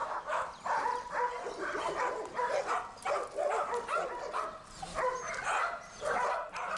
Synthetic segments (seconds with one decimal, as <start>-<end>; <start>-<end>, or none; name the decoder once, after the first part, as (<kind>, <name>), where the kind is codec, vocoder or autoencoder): 0.0-0.5 (autoencoder, DAC-VAE)

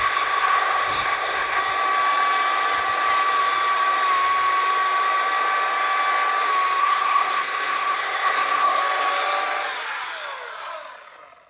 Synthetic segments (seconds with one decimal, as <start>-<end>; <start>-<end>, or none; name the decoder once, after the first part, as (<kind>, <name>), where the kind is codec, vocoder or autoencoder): 0.0-1.6 (codec, SNAC); 6.8-8.8

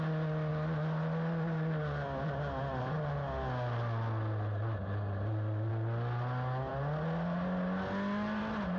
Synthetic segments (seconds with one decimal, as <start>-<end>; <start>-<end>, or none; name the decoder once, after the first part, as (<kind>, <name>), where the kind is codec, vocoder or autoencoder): none

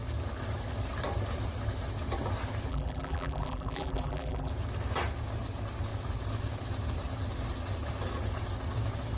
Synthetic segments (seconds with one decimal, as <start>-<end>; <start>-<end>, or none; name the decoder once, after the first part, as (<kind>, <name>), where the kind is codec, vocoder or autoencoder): 2.7-4.5 (vocoder, BigVGAN v2)